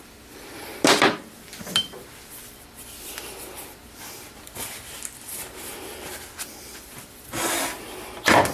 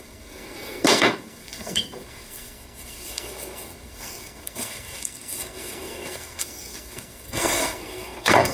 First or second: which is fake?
second